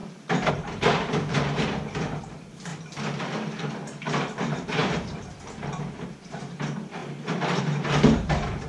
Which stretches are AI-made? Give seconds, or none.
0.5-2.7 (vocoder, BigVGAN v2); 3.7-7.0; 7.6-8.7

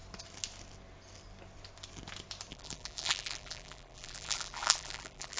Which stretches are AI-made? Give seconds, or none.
2.5-5.4 (vocoder, BigVGAN v2)

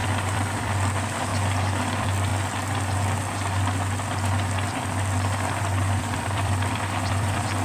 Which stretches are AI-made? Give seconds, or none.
0.0-1.3 (vocoder, BigVGAN v2); 1.8-2.3; 6.0-7.6

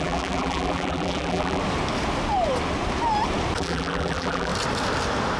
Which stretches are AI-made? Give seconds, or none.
0.0-1.6 (vocoder, BigVGAN v2); 3.6-4.5

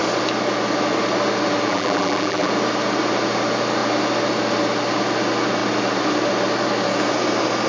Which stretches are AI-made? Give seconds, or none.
1.7-2.5 (vocoder, BigVGAN v2)

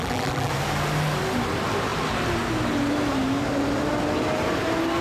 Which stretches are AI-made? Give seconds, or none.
0.0-0.5 (vocoder, BigVGAN v2)